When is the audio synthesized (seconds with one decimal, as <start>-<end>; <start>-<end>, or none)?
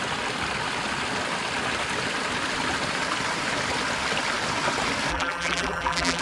5.1-6.2